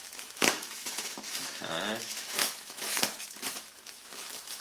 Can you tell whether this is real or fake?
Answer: fake